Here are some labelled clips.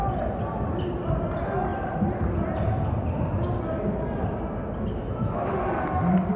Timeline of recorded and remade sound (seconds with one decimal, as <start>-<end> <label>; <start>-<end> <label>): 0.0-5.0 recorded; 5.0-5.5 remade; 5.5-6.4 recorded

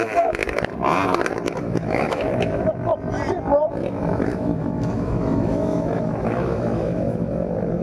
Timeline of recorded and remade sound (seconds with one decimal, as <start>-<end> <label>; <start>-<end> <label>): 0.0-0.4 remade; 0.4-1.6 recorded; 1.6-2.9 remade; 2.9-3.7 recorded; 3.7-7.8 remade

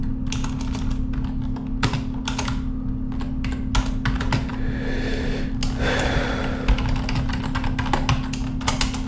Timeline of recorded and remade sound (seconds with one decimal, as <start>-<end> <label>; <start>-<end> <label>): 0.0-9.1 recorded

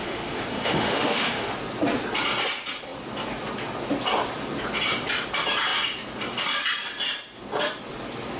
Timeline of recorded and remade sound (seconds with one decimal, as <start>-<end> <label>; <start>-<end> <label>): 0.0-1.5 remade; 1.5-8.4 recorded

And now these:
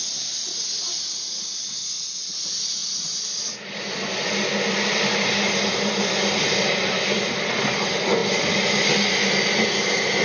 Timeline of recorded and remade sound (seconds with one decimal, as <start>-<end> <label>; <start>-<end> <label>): 0.0-10.2 recorded

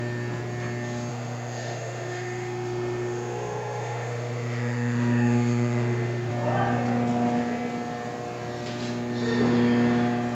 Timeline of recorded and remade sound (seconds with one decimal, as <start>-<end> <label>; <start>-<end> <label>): 0.0-1.1 recorded; 1.1-6.3 remade; 6.3-10.3 recorded

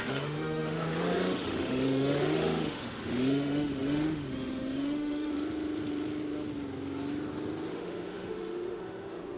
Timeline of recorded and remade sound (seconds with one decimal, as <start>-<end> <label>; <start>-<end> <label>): 0.0-5.3 remade; 5.3-7.7 recorded; 7.7-9.4 remade